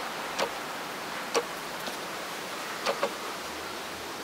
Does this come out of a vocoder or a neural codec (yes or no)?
yes